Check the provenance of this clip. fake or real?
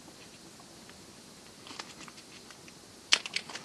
real